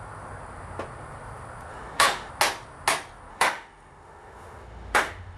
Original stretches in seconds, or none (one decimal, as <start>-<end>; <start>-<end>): 0.0-1.7; 2.3-3.3